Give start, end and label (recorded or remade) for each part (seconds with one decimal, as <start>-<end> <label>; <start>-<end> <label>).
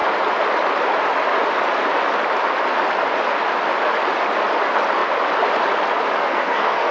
0.0-6.2 recorded; 6.2-6.9 remade